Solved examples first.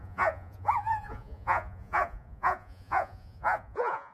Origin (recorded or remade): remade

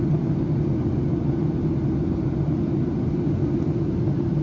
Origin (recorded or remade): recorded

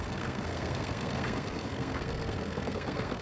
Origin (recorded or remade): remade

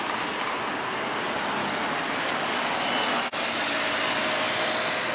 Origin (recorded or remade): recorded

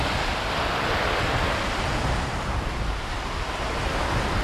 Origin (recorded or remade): remade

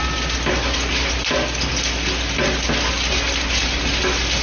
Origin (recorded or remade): recorded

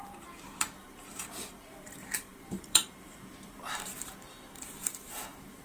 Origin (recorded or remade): remade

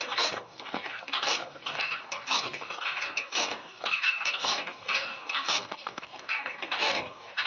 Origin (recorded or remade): remade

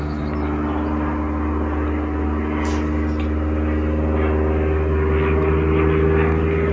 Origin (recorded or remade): recorded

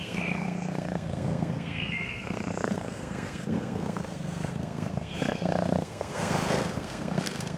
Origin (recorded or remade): remade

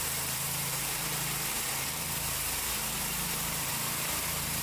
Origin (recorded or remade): remade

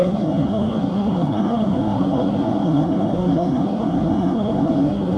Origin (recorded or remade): remade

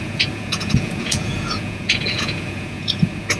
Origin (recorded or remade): remade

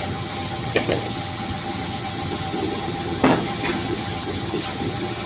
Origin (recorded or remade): remade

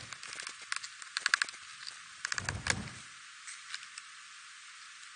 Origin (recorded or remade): recorded